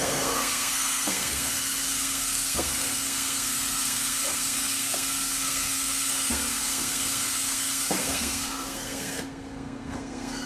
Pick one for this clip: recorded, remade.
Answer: remade